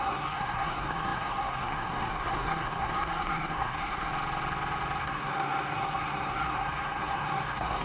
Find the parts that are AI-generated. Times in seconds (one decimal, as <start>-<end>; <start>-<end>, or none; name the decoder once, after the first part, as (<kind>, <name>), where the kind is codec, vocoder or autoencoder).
0.0-4.1 (codec, SNAC); 5.0-7.8